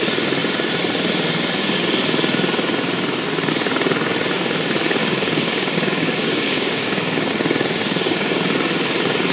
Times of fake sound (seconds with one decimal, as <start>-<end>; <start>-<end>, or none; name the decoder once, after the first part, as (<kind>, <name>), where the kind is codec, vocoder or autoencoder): 5.0-7.3 (codec, DAC); 7.8-8.4